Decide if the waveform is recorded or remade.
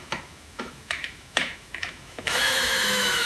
remade